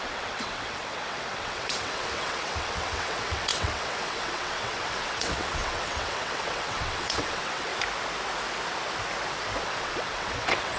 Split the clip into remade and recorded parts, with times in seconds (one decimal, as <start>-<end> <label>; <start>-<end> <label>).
0.0-7.7 remade; 7.7-9.6 recorded; 9.6-10.8 remade

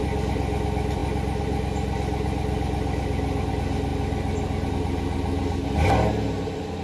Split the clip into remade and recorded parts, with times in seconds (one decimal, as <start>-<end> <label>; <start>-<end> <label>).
0.0-6.8 recorded

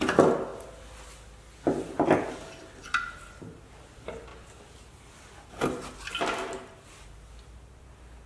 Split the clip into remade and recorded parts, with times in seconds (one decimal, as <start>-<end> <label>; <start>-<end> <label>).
0.0-8.3 recorded